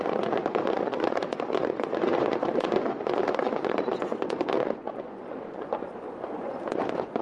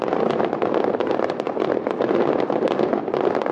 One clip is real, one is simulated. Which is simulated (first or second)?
first